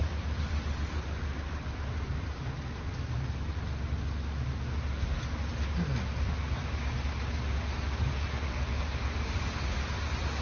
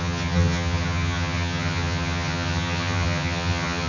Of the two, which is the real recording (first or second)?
first